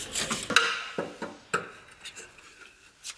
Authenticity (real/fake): real